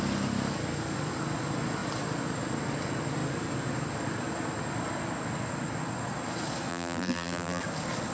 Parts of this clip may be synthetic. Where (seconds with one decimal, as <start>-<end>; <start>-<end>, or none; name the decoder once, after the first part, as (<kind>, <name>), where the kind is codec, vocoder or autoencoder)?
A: 6.7-7.6 (vocoder, BigVGAN v2)